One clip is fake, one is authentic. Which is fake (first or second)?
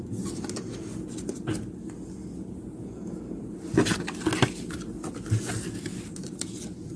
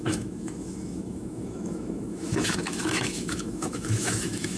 second